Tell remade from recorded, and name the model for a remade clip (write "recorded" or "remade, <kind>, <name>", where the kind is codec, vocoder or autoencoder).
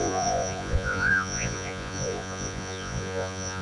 remade, vocoder, Vocos